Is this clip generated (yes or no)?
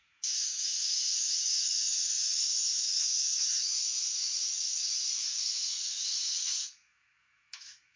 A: yes